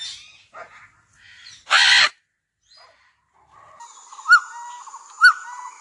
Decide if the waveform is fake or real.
real